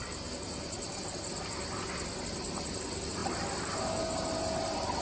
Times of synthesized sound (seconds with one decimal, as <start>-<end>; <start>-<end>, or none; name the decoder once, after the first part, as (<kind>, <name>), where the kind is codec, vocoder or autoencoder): none